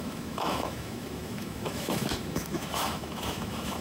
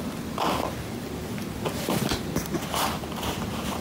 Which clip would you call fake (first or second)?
first